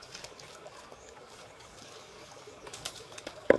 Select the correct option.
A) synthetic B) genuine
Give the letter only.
A